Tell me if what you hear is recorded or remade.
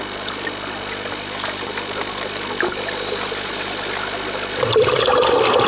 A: recorded